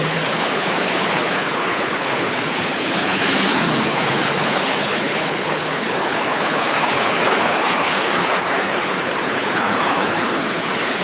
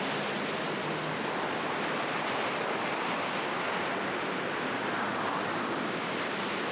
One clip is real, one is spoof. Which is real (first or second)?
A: second